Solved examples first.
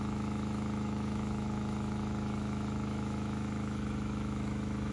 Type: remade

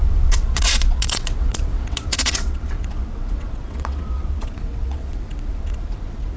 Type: remade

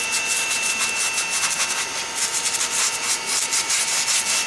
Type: recorded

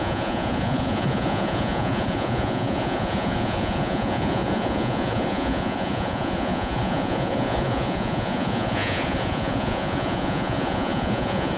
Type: remade